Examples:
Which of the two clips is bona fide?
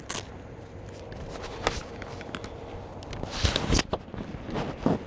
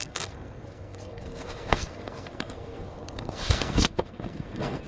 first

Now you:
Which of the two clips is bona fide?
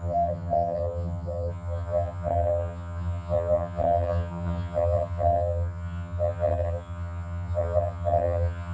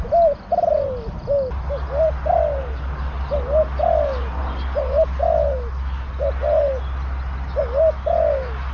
second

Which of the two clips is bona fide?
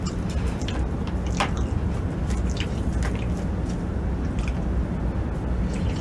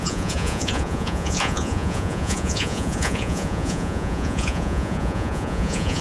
first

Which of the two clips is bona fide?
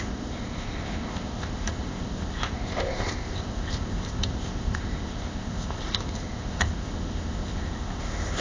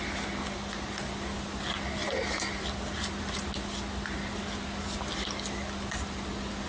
second